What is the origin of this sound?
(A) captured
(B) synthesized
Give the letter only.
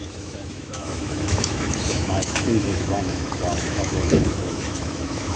B